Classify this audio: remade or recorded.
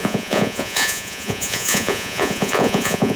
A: remade